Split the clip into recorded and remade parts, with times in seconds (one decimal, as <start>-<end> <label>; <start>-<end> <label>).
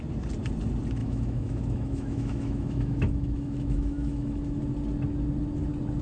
0.0-1.0 recorded; 1.0-4.6 remade; 4.6-6.0 recorded